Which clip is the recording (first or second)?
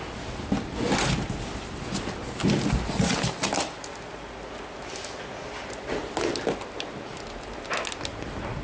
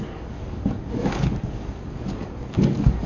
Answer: first